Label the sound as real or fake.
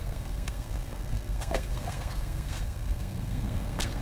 fake